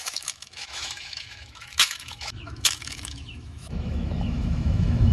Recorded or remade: remade